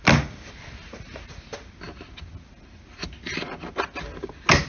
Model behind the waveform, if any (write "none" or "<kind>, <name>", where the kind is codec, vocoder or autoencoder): none